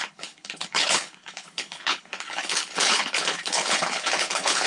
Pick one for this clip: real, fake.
fake